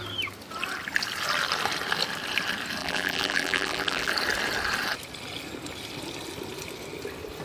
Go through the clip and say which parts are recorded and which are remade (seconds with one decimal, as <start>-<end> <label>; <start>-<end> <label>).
0.0-2.8 recorded; 2.8-4.1 remade; 4.1-7.4 recorded